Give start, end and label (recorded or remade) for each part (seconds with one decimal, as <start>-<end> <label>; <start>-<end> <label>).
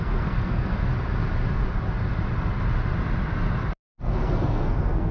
0.0-0.9 remade; 0.9-4.0 recorded; 4.0-5.1 remade